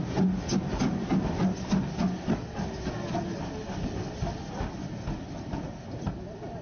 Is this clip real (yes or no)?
yes